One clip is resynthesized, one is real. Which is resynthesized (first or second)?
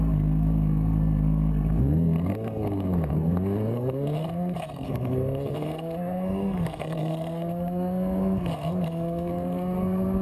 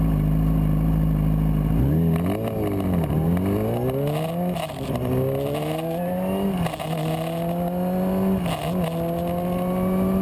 first